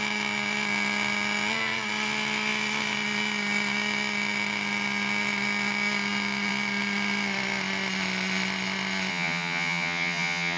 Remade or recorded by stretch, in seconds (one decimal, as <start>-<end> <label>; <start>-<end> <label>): 0.0-9.1 recorded; 9.1-10.6 remade